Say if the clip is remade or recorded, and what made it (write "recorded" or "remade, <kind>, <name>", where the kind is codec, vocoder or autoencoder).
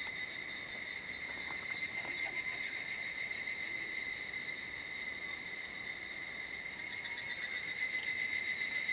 recorded